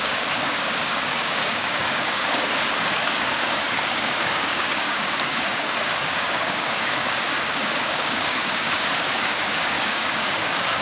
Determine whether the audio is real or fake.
fake